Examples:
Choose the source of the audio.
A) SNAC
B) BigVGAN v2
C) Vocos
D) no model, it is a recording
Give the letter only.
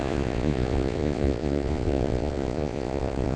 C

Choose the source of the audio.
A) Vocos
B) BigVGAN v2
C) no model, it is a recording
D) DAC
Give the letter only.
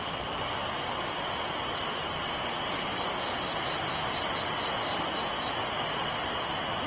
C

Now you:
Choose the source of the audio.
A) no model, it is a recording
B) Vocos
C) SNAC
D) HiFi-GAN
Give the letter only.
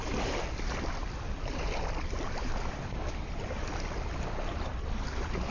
A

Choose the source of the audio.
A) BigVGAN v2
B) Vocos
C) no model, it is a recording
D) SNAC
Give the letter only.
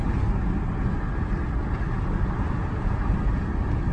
C